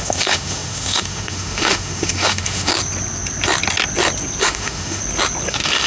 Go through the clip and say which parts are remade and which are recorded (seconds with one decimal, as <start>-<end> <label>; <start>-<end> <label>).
0.0-2.7 remade; 2.7-4.4 recorded; 4.4-5.0 remade; 5.0-5.5 recorded; 5.5-5.9 remade